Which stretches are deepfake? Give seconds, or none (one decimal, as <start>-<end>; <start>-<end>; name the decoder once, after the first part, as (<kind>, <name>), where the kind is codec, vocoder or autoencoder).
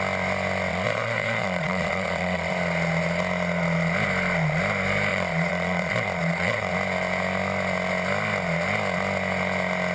0.7-2.5 (vocoder, Vocos); 5.1-6.7